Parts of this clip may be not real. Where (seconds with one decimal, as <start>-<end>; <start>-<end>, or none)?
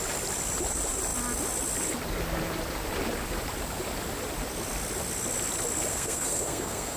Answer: 5.9-7.0